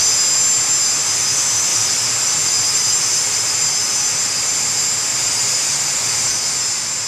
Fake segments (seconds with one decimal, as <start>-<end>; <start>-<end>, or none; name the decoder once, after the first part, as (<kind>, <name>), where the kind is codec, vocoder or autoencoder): 1.7-3.7 (vocoder, BigVGAN v2); 5.1-6.3

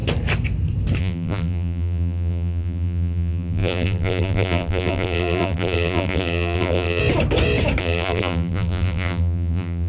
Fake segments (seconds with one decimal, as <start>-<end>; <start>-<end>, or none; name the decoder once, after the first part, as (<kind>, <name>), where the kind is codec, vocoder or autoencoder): 1.0-7.0 (vocoder, BigVGAN v2); 7.8-9.9

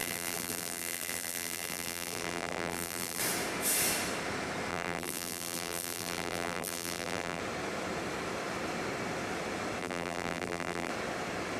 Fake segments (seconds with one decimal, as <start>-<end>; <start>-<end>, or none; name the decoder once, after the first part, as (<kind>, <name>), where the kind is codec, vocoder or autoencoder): 0.0-3.2 (vocoder, BigVGAN v2); 4.7-7.4; 9.8-10.9